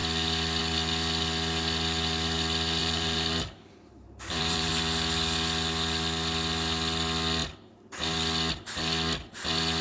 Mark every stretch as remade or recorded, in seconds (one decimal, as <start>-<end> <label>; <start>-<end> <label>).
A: 0.0-2.8 recorded; 2.8-4.7 remade; 4.7-9.8 recorded